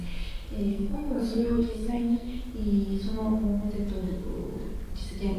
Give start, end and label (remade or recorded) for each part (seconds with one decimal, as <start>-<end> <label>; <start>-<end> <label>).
0.0-0.7 recorded; 0.7-2.4 remade; 2.4-5.4 recorded

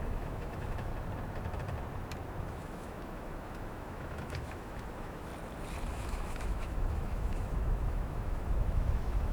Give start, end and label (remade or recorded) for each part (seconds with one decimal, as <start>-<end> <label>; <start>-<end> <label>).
0.0-0.9 remade; 0.9-2.4 recorded; 2.4-5.3 remade; 5.3-5.9 recorded; 5.9-9.3 remade

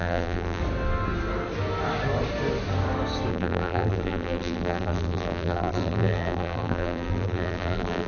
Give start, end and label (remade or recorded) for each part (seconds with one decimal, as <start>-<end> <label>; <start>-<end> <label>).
0.0-0.6 remade; 0.6-3.3 recorded; 3.3-8.1 remade

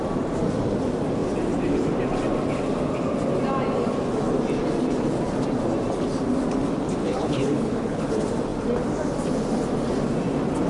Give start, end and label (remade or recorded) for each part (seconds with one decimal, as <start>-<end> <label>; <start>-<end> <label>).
0.0-7.0 recorded; 7.0-8.1 remade; 8.1-10.7 recorded

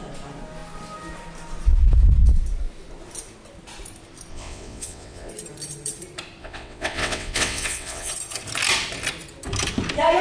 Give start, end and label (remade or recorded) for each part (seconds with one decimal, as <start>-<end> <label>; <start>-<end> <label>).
0.0-4.3 recorded; 4.3-5.3 remade; 5.3-6.4 recorded; 6.4-8.1 remade; 8.1-10.2 recorded

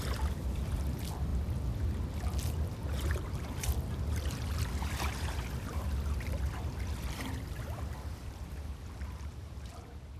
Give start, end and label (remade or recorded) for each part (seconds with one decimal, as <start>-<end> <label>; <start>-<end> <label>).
0.0-10.2 remade

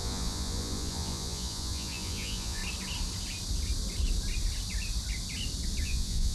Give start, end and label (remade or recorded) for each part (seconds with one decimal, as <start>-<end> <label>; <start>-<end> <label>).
0.0-2.6 remade; 2.6-5.8 recorded; 5.8-6.3 remade